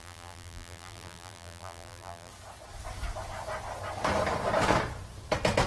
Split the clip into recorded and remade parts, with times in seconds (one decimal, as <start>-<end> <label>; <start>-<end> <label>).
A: 0.0-2.3 remade; 2.3-5.7 recorded